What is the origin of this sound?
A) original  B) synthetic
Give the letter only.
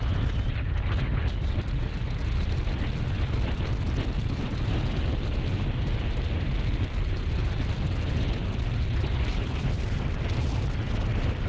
A